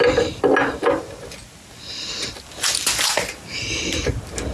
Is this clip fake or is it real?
real